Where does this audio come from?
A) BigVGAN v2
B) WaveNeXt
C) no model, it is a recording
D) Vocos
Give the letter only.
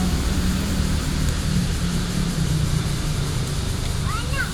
A